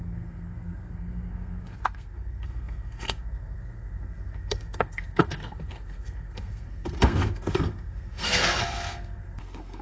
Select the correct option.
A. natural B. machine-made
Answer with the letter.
B